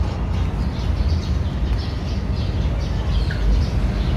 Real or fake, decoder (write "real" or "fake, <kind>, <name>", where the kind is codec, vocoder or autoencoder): real